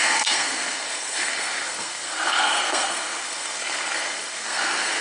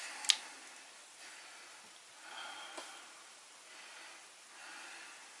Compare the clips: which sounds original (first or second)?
second